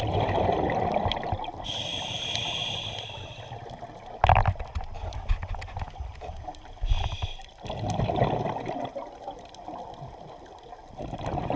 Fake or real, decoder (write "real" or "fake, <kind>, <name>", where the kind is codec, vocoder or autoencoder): real